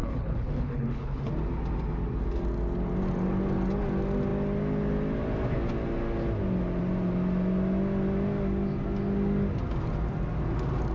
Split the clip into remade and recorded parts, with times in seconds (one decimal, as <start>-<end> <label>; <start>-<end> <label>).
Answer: 0.0-1.3 remade; 1.3-10.9 recorded